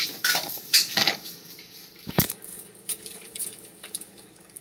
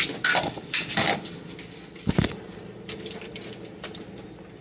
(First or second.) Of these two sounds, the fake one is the first